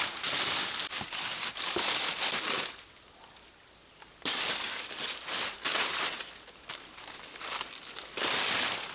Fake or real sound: real